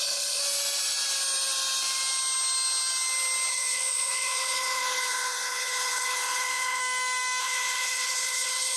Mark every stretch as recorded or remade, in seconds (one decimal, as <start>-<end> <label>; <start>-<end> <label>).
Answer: 0.0-0.4 remade; 0.4-3.5 recorded; 3.5-6.8 remade; 6.8-7.4 recorded; 7.4-8.8 remade